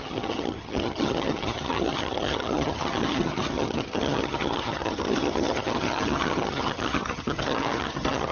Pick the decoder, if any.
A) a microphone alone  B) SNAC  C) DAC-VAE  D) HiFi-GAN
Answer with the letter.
D